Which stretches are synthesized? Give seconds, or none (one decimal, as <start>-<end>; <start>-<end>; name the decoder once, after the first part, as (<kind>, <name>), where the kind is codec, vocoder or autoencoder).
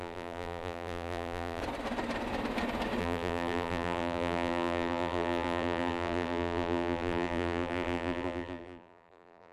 0.0-1.6 (vocoder, BigVGAN v2); 3.0-9.5